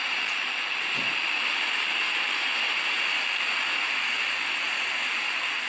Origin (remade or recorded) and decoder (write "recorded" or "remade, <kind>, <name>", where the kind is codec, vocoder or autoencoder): recorded